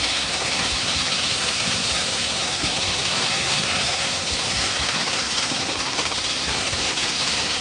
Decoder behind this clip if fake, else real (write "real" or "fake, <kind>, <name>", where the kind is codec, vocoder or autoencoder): fake, codec, SNAC